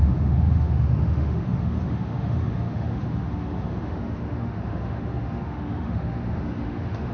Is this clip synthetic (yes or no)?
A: yes